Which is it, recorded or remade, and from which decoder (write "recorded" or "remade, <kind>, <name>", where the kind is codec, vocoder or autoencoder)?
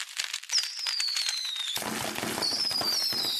recorded